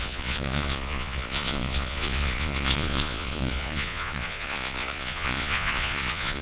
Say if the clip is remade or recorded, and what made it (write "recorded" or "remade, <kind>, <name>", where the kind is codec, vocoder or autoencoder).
remade, vocoder, Vocos